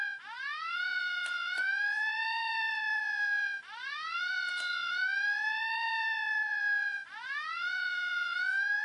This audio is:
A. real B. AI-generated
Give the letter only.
B